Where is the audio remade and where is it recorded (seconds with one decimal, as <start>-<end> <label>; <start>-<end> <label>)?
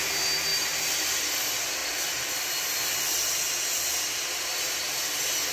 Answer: 0.0-5.5 recorded